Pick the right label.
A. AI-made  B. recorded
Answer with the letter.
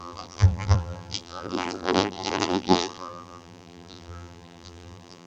A